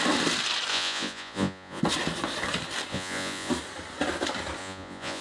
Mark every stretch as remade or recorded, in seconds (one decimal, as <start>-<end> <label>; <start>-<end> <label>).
0.0-0.7 recorded; 0.7-1.8 remade; 1.8-2.9 recorded; 2.9-3.5 remade; 3.5-4.6 recorded; 4.6-5.2 remade